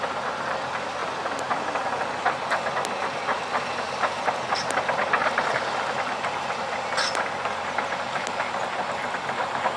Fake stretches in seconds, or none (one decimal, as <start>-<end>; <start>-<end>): none